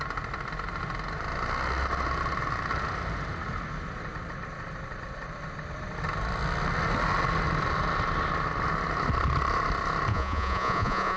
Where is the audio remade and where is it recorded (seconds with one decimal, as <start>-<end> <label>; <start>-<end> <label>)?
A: 0.0-10.1 recorded; 10.1-11.2 remade